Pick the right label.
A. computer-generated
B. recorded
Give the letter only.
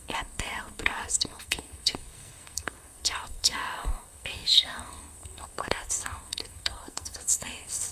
A